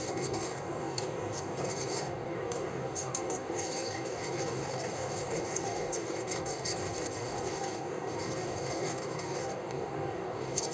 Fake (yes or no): yes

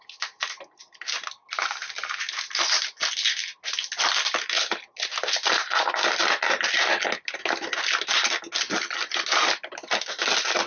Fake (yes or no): no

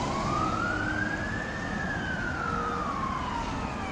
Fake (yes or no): no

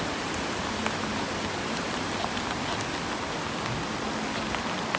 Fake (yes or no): no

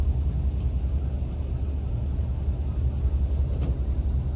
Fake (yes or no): no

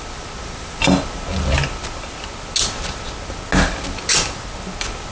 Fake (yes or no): no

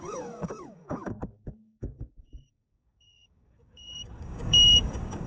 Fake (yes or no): yes